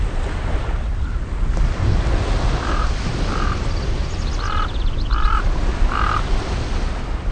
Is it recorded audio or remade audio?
recorded